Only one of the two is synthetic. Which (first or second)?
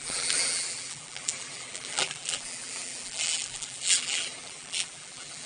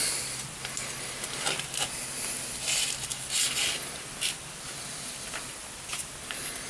first